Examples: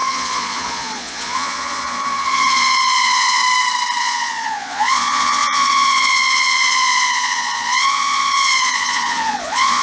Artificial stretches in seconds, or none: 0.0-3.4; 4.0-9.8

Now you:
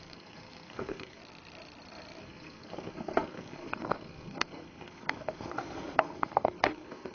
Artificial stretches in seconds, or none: 0.0-1.2; 2.2-7.1

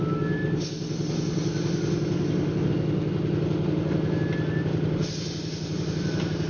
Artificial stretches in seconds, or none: none

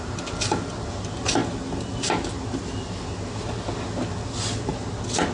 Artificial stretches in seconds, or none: none

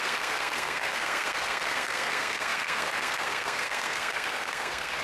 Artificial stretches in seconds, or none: 0.0-5.0

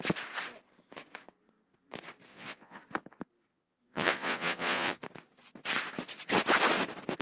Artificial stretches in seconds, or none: 2.3-2.8; 3.5-5.0

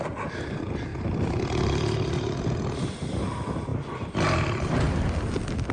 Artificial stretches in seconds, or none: 0.9-2.3; 3.7-4.9

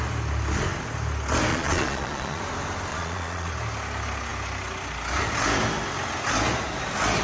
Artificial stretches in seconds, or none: 1.5-2.4; 2.9-3.5